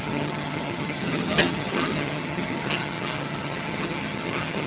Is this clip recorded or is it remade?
remade